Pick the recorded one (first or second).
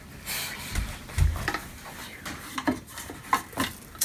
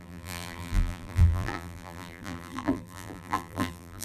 first